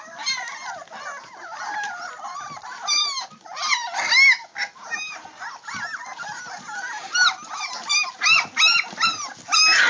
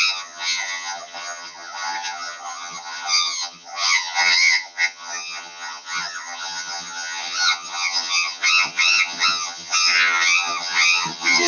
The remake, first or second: second